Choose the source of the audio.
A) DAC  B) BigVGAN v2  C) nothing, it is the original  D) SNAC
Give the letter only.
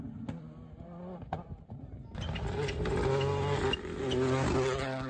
C